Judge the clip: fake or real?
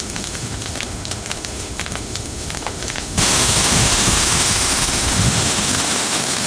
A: fake